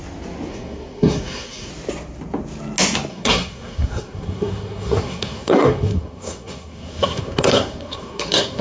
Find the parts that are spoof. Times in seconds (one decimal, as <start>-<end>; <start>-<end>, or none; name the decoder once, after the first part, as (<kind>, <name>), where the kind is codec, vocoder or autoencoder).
0.5-1.7 (codec, SNAC); 3.1-8.6